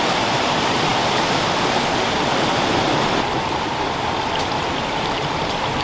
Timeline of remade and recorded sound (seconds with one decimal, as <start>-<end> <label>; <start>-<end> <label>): 0.0-5.8 remade